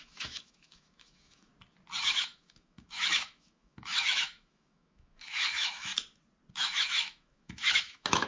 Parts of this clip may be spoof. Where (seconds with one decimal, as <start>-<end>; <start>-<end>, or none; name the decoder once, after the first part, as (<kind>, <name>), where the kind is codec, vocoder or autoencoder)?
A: 0.0-1.5 (autoencoder, DAC-VAE); 2.0-5.9; 6.5-8.3